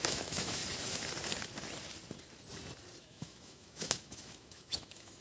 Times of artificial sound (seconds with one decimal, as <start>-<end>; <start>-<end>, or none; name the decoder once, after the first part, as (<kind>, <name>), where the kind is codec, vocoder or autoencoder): 0.0-0.6 (autoencoder, DAC-VAE); 3.0-5.2